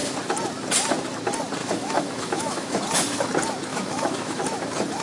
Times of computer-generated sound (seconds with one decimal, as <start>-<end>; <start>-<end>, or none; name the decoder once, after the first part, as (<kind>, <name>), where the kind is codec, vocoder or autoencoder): 1.6-2.8 (autoencoder, DAC-VAE); 3.7-4.4